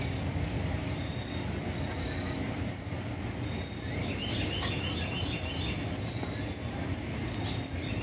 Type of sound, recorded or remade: recorded